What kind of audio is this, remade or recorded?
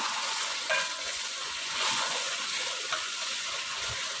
remade